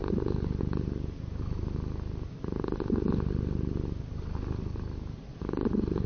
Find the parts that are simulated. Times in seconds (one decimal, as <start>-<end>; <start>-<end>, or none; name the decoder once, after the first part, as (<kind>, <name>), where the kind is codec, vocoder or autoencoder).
none